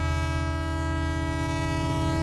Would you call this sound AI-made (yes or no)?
no